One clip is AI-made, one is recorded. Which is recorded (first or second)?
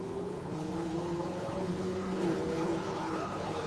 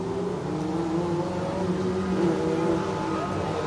second